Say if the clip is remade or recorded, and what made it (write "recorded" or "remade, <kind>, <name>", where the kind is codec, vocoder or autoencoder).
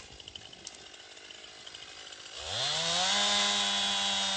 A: recorded